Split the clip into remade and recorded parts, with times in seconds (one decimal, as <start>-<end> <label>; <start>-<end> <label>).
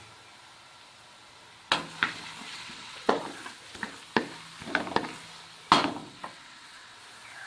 0.0-2.5 recorded; 2.5-3.2 remade; 3.2-6.0 recorded; 6.0-7.0 remade; 7.0-7.5 recorded